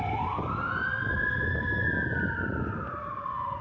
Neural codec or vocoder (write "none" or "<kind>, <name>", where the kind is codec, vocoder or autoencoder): none